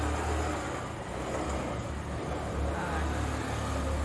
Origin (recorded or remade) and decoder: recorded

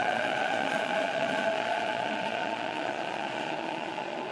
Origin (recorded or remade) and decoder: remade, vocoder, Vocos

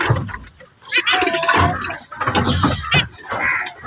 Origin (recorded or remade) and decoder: recorded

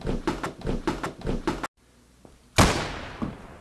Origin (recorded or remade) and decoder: recorded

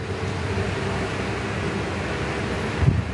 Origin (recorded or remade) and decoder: recorded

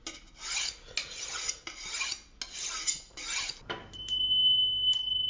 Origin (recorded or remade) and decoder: recorded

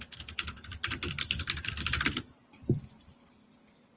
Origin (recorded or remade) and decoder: remade, vocoder, BigVGAN v2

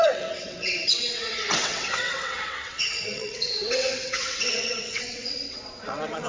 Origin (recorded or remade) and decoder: remade, vocoder, WaveNeXt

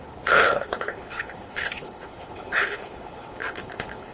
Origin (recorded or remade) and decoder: remade, codec, HILCodec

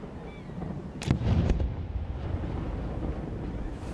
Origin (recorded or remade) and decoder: recorded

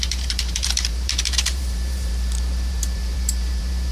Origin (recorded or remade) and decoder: remade, vocoder, BigVGAN v2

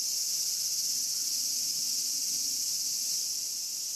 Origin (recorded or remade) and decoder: recorded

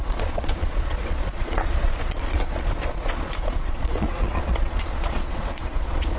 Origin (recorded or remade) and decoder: remade, vocoder, Vocos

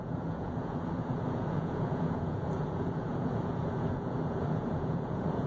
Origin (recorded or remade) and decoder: remade, vocoder, Vocos